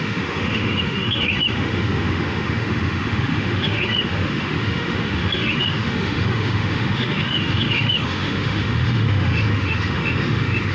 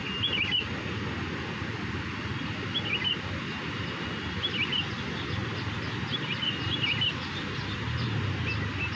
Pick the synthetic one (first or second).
first